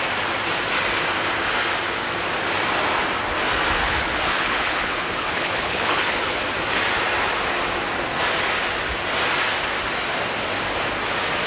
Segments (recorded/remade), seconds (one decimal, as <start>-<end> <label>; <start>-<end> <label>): 0.0-3.8 recorded; 3.8-6.4 remade; 6.4-11.5 recorded